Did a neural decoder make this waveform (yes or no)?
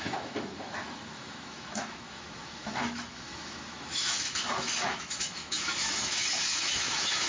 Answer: yes